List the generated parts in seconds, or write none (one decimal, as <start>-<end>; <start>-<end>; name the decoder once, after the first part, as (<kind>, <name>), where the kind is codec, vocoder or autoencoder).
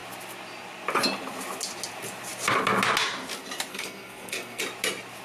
3.7-4.6 (codec, SNAC)